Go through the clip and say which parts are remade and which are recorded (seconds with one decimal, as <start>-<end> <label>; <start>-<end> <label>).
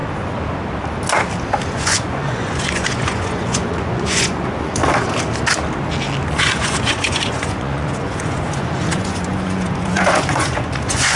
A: 0.0-1.7 recorded; 1.7-4.8 remade; 4.8-6.3 recorded; 6.3-11.2 remade